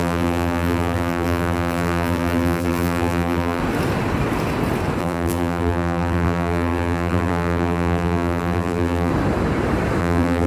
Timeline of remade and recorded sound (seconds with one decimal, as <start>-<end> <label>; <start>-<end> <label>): 0.0-3.6 remade; 3.6-5.0 recorded; 5.0-9.1 remade; 9.1-10.0 recorded; 10.0-10.5 remade